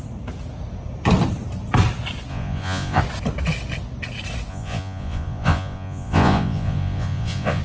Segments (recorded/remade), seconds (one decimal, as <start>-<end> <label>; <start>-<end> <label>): 0.0-2.3 recorded; 2.3-3.0 remade; 3.0-4.5 recorded; 4.5-7.6 remade